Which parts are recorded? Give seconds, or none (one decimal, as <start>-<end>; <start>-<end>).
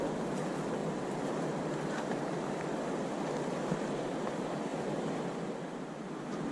0.0-6.5